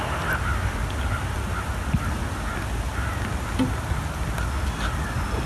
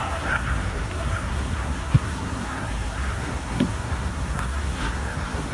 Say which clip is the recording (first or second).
first